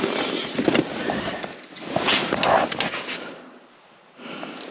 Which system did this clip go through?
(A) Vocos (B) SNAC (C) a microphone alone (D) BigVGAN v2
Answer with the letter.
C